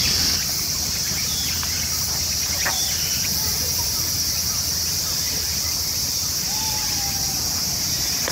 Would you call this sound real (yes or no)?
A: yes